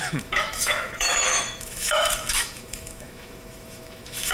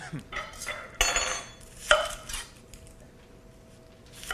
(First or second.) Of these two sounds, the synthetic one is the first